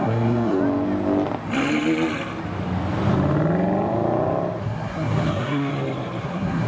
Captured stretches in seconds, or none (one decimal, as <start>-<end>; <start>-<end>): 0.6-4.6; 5.7-6.2